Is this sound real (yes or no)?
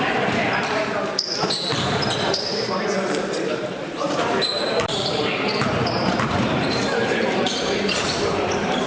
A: no